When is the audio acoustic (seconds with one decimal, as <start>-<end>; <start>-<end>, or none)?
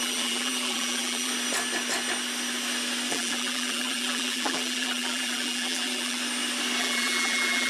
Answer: 1.3-3.1; 6.2-6.8